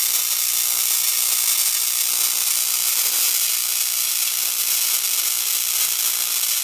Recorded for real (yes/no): yes